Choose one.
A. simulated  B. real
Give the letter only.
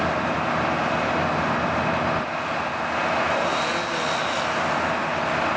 B